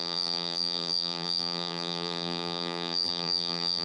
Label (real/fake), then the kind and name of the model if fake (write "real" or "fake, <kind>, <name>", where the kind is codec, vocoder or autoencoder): fake, vocoder, BigVGAN v2